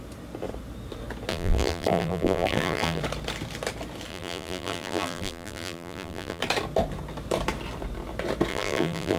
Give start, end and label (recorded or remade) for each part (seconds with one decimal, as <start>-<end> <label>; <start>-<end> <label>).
0.0-1.3 recorded; 1.3-3.0 remade; 3.0-4.1 recorded; 4.1-6.4 remade; 6.4-8.5 recorded; 8.5-9.2 remade